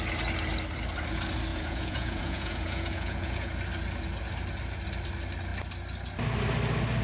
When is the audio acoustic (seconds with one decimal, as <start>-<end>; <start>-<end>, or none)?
0.0-1.5; 3.5-7.0